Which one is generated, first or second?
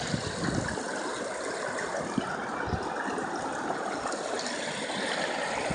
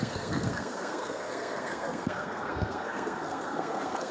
second